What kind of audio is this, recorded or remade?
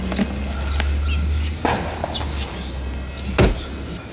recorded